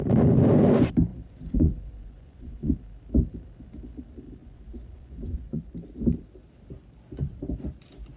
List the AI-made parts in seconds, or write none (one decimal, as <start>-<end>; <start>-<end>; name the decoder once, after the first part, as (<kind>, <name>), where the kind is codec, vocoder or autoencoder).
1.1-2.7 (vocoder, Vocos); 4.4-5.6